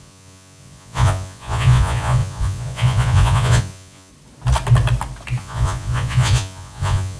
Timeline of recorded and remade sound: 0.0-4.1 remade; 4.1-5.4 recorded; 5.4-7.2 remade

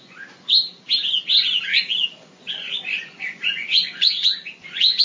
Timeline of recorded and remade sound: 0.0-0.7 remade; 0.7-1.7 recorded; 1.7-5.0 remade

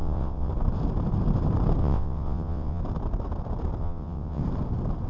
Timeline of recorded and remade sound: 0.0-0.5 remade; 0.5-1.8 recorded; 1.8-2.8 remade; 2.8-3.8 recorded; 3.8-4.4 remade; 4.4-5.1 recorded